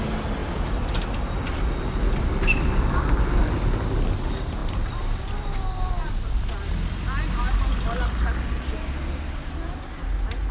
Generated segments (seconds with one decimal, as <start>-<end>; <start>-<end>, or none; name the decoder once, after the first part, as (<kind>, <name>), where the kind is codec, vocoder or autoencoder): 0.4-2.2 (vocoder, BigVGAN v2); 4.6-5.9